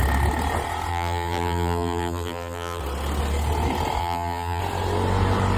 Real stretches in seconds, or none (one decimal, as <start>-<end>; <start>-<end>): 0.0-0.9; 2.8-4.0; 4.6-5.6